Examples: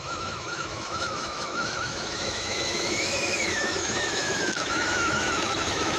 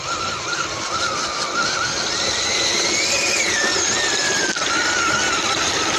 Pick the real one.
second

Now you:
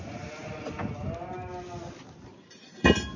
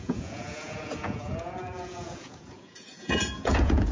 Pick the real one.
first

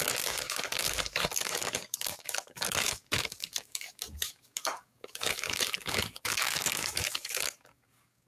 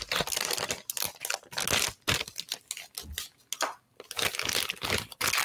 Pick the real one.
second